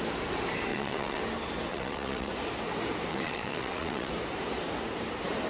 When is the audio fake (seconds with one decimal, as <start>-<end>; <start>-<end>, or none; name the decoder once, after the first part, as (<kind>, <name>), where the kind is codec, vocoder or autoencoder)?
0.7-1.2 (vocoder, WaveNeXt); 1.7-2.3; 3.1-4.1